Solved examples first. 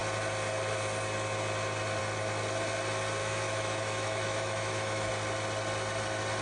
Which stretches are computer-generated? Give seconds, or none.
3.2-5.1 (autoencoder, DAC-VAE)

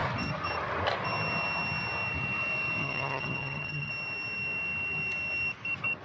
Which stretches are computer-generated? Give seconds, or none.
2.8-3.9 (vocoder, HiFi-GAN)

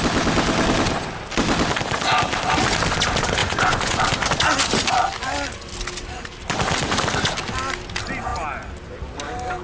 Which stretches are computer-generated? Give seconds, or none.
3.4-4.0 (vocoder, Vocos)

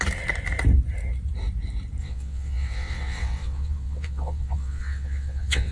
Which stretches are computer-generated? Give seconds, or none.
2.0-5.7 (vocoder, WaveNeXt)

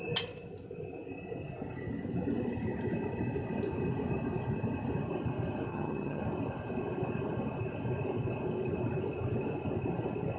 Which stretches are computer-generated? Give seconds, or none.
5.7-6.2 (vocoder, HiFi-GAN)

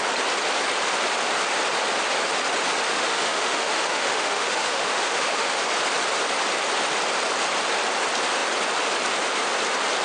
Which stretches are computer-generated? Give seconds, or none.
2.9-5.6 (autoencoder, DAC-VAE)